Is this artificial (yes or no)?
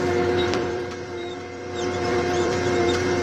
yes